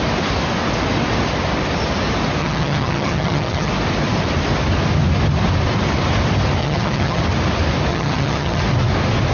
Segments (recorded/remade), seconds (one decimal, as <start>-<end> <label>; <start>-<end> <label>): 0.0-2.4 recorded; 2.4-3.7 remade; 3.7-6.6 recorded; 6.6-7.2 remade; 7.2-7.9 recorded; 7.9-8.6 remade; 8.6-9.3 recorded